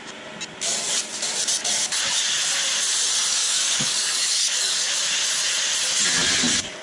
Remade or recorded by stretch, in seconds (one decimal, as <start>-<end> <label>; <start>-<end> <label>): 0.0-3.3 recorded; 3.3-4.9 remade; 4.9-6.8 recorded